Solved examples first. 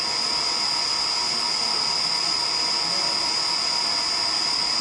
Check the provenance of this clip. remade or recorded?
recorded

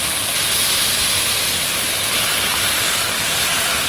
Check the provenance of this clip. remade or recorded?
recorded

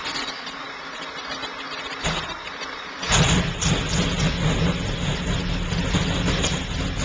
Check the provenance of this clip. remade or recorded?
recorded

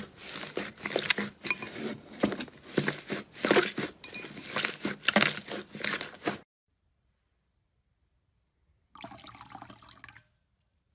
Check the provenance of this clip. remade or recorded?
recorded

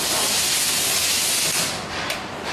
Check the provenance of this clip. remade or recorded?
recorded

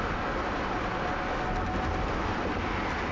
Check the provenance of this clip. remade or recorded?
recorded